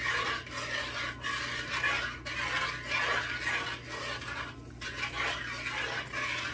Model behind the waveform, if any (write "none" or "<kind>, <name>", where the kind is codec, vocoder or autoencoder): none